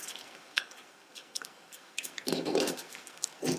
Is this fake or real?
fake